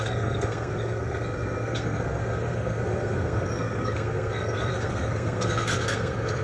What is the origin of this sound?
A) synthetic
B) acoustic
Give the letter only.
A